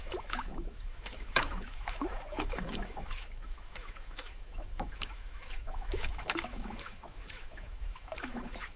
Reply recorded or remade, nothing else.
remade